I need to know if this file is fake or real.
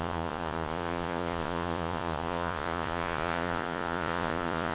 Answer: fake